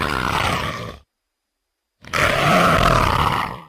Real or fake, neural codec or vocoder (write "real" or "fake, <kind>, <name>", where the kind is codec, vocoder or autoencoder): real